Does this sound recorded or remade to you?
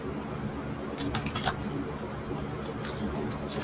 recorded